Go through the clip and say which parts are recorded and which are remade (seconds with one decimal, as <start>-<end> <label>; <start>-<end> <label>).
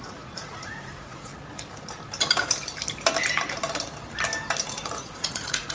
0.0-1.3 remade; 1.3-4.7 recorded; 4.7-5.7 remade